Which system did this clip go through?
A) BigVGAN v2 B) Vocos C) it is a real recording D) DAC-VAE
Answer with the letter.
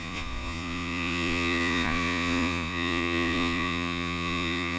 B